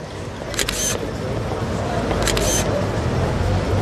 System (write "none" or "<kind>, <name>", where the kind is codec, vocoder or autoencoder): none